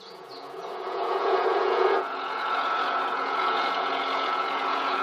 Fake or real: fake